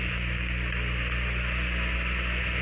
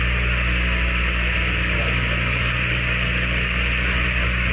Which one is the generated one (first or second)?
second